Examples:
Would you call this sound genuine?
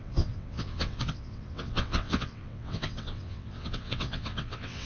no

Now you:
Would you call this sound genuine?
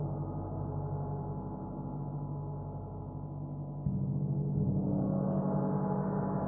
yes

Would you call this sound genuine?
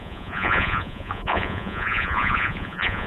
no